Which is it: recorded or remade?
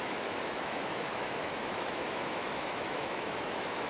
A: remade